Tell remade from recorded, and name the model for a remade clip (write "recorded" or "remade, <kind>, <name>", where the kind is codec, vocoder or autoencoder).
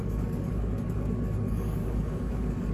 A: remade, codec, DAC